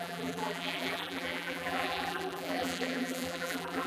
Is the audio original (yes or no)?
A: no